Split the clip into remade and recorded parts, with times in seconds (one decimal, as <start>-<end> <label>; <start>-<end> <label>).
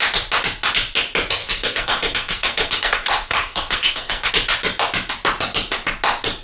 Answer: 0.0-1.4 recorded; 1.4-4.3 remade; 4.3-6.4 recorded